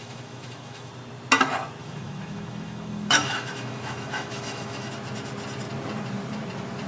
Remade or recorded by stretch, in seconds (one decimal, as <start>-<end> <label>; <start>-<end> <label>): 0.0-0.9 remade; 0.9-1.8 recorded; 1.8-4.9 remade; 4.9-6.9 recorded